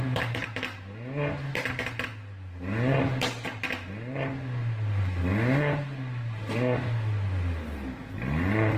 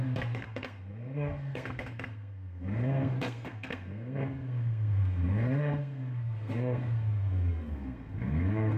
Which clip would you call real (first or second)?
first